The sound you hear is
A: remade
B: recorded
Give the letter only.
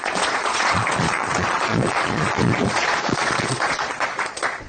A